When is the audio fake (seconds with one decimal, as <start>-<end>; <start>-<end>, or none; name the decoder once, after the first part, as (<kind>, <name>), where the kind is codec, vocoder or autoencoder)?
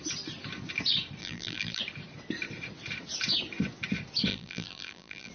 1.2-1.8 (vocoder, BigVGAN v2); 4.3-5.3